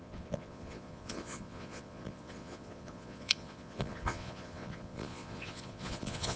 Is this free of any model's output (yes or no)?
no